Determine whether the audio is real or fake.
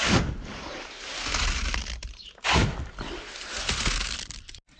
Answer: real